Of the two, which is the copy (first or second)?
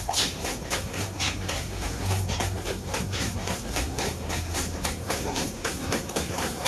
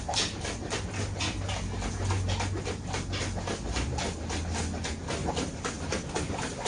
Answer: first